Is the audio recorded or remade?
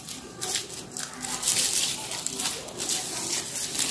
recorded